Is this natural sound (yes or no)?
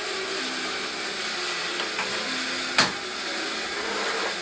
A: yes